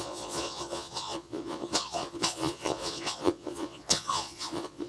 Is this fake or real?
fake